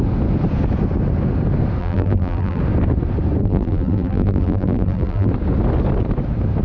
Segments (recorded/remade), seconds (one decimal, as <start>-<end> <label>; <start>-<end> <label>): 0.0-1.8 recorded; 1.8-2.6 remade; 2.6-3.4 recorded; 3.4-5.3 remade; 5.3-6.6 recorded